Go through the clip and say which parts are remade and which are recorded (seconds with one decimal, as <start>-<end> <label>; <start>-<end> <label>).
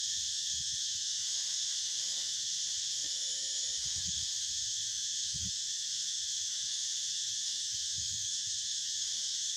0.0-9.6 remade